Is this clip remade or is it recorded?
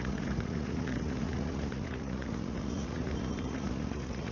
remade